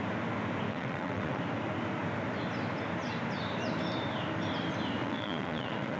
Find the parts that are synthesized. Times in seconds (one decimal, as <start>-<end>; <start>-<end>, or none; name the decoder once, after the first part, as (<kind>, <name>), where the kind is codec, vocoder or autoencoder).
0.7-1.4 (vocoder, WaveNeXt); 5.0-6.0